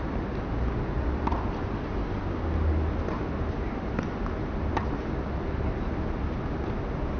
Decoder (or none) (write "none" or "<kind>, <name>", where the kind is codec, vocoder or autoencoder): none